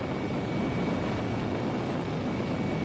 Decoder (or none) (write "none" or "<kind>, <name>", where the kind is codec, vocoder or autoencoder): none